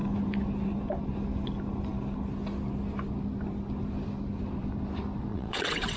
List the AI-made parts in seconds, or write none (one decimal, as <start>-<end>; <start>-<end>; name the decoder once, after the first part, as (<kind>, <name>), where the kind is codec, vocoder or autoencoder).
5.3-6.0 (vocoder, WaveNeXt)